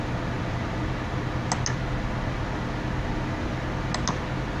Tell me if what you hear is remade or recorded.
recorded